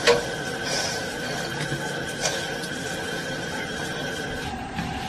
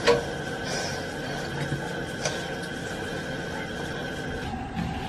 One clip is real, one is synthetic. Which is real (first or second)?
second